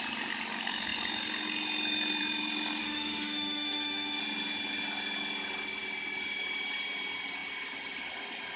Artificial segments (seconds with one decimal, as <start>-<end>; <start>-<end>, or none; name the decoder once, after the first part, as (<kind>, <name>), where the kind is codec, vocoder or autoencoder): 2.8-4.2 (autoencoder, DAC-VAE)